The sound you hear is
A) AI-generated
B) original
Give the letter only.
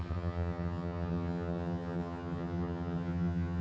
A